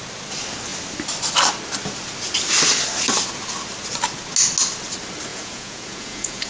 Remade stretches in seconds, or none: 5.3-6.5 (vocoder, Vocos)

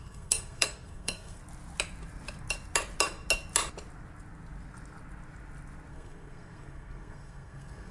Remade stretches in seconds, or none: 0.0-1.4 (codec, SNAC); 5.9-7.9